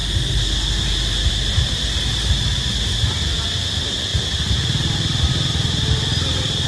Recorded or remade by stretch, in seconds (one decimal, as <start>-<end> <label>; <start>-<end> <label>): 0.0-6.7 recorded